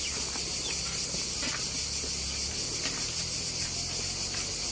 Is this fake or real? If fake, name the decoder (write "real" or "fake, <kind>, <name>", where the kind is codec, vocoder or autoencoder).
real